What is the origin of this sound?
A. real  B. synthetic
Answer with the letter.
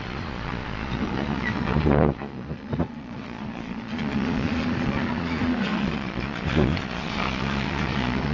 B